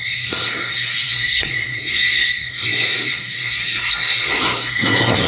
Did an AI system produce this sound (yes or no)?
yes